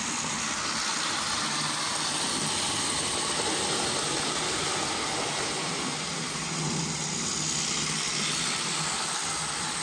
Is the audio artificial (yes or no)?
no